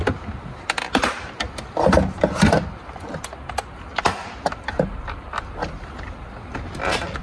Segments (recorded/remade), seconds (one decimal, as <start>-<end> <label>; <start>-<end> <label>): 0.0-3.9 recorded; 3.9-7.2 remade